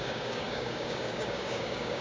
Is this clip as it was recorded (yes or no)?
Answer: no